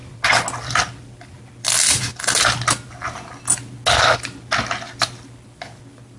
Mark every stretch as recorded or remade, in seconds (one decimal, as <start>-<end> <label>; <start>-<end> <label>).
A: 0.0-6.2 recorded